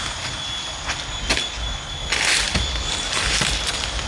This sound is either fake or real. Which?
real